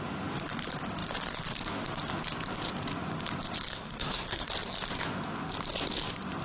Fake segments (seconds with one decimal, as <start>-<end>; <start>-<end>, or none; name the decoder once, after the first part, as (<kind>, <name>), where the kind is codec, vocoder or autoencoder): 3.8-4.5 (codec, SNAC)